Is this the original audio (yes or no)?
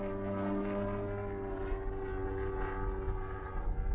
yes